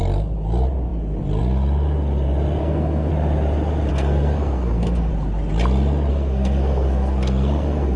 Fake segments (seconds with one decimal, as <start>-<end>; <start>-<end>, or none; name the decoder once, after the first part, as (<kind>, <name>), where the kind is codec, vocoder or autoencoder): 2.6-3.1 (codec, SNAC); 3.9-5.1; 6.1-8.0